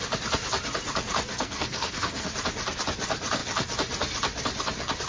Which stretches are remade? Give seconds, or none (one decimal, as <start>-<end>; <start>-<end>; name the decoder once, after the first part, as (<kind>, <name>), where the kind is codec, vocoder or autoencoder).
1.3-2.3 (codec, SNAC)

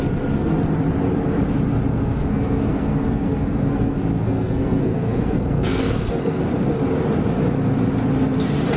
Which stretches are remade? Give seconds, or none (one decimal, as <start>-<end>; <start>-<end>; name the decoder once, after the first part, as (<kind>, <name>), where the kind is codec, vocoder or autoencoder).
1.9-6.4 (codec, SNAC)

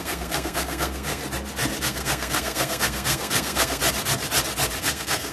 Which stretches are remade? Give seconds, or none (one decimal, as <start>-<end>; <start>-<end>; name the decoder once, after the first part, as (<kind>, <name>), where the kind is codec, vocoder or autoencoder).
0.0-1.2 (codec, SNAC); 1.8-3.8; 4.8-5.3

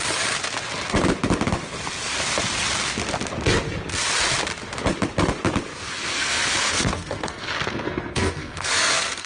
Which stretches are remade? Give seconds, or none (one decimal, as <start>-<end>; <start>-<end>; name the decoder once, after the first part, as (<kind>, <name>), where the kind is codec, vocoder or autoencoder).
5.7-9.3 (codec, SNAC)